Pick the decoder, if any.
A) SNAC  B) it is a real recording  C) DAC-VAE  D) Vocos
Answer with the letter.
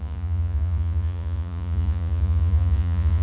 D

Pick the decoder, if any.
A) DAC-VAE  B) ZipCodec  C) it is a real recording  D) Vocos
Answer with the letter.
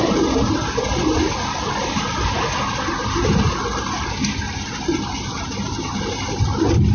C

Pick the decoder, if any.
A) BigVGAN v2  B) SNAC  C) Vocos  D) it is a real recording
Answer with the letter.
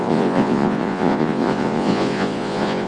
C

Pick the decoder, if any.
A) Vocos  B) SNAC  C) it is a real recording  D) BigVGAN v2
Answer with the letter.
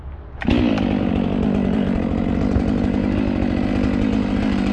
C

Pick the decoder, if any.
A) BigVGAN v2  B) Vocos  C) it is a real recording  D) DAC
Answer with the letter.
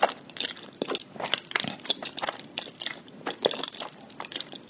C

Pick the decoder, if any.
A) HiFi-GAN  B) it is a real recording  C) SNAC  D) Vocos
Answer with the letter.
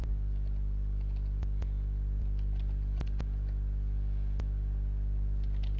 B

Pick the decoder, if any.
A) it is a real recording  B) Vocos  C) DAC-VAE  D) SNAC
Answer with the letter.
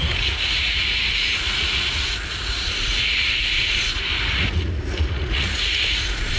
B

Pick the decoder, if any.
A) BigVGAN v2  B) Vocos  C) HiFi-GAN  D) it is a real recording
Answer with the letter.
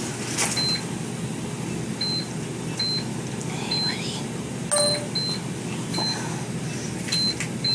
D